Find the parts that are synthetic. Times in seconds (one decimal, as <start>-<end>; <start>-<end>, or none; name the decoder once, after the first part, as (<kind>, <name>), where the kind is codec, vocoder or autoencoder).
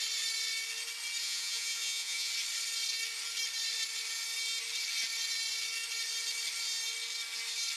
1.2-2.3 (vocoder, Vocos)